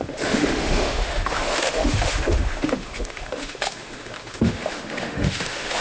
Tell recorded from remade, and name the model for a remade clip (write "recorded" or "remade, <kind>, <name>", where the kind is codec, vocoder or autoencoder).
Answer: remade, autoencoder, DAC-VAE